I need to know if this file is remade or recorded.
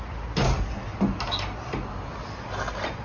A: recorded